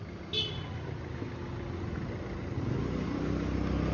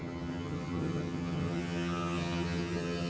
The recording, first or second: first